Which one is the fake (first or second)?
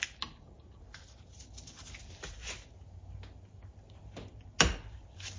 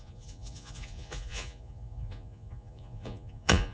second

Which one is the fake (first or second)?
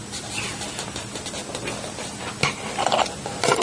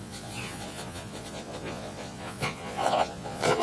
second